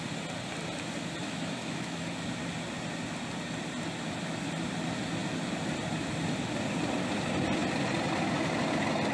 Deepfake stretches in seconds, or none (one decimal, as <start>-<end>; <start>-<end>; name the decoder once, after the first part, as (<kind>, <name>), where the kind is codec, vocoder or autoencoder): 1.2-2.1 (autoencoder, DAC-VAE)